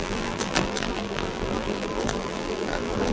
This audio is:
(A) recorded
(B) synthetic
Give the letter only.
B